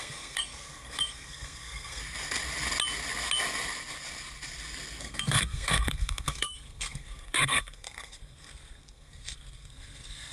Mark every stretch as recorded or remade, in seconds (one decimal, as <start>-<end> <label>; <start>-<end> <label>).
0.0-2.0 remade; 2.0-5.0 recorded; 5.0-10.3 remade